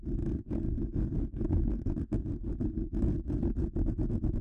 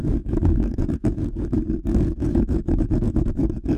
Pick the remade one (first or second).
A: second